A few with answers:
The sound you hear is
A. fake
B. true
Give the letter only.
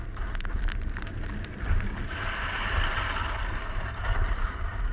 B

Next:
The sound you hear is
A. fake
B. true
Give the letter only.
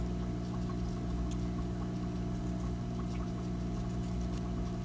B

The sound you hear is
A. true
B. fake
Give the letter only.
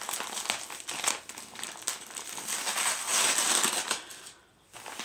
A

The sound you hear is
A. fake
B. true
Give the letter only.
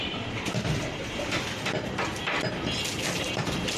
A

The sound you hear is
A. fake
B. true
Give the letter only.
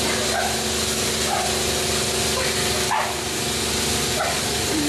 B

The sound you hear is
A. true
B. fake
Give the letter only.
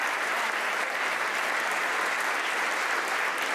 B